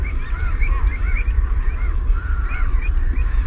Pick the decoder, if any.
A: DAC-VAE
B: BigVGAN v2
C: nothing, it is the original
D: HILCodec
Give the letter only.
C